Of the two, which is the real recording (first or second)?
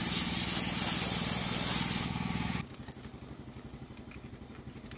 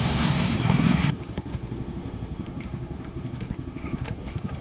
first